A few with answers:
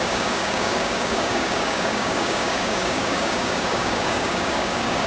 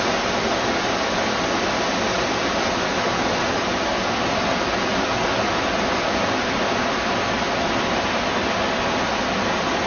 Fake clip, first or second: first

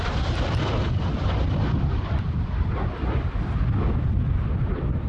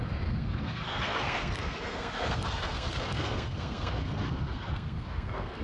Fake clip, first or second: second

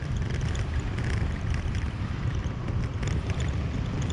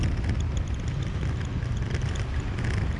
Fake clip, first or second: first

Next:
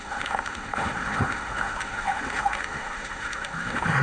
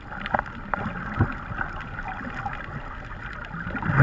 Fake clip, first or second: first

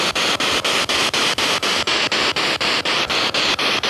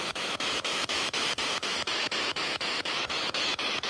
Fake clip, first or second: second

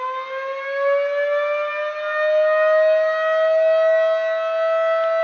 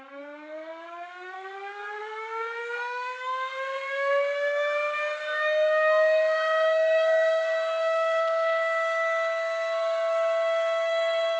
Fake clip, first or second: second